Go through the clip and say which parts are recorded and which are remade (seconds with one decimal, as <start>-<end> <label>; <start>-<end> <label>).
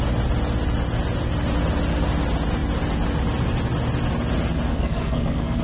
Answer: 0.0-4.7 recorded; 4.7-5.6 remade